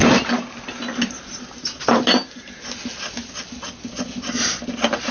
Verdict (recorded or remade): recorded